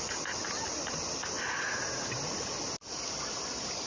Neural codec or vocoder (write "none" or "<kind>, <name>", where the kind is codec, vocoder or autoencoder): none